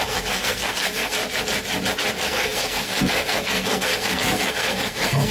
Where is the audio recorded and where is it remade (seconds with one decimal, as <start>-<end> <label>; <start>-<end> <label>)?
0.0-1.2 remade; 1.2-2.1 recorded; 2.1-5.3 remade